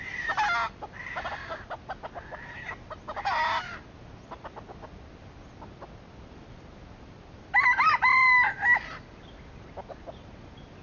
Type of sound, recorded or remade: recorded